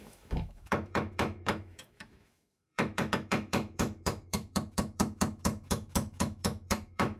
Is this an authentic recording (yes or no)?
no